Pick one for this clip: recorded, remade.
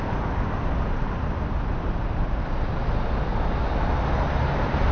recorded